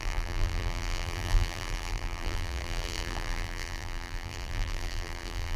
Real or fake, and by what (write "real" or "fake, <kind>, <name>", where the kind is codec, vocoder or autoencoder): fake, vocoder, BigVGAN v2